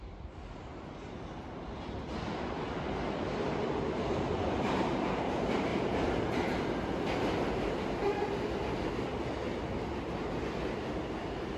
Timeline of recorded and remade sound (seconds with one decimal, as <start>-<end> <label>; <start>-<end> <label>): 0.0-0.7 recorded; 0.7-1.3 remade; 1.3-5.7 recorded; 5.7-7.8 remade; 7.8-11.6 recorded